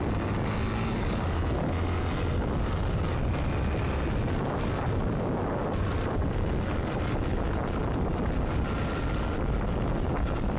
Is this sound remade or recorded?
recorded